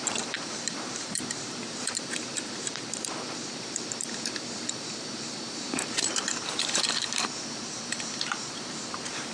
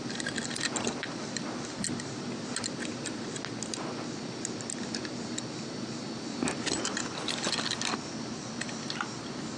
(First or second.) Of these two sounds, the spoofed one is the first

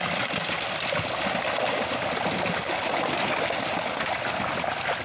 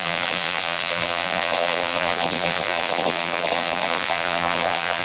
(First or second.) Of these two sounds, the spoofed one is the second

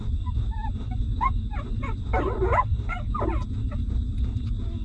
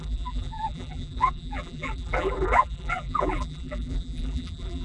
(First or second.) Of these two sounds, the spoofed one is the second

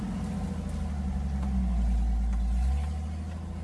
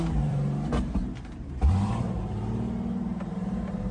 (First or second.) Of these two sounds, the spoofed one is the second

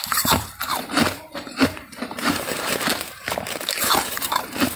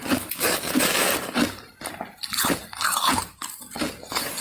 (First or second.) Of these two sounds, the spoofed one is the first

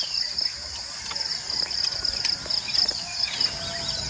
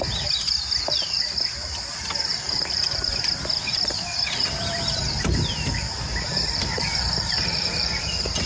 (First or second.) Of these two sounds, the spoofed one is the second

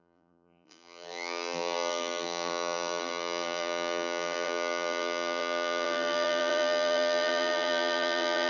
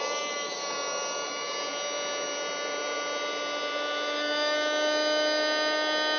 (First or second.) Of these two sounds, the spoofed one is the first